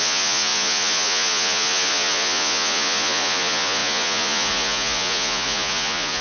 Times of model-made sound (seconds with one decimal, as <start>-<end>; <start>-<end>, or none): 0.0-6.2